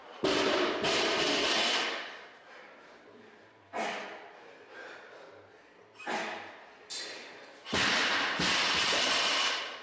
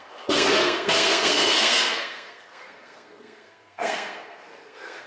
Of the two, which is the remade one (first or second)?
second